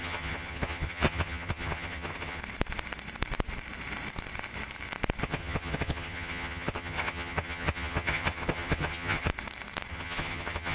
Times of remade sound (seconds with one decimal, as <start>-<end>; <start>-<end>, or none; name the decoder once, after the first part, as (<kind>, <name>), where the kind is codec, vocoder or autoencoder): 0.0-2.4 (vocoder, HiFi-GAN); 5.2-9.3; 9.9-10.7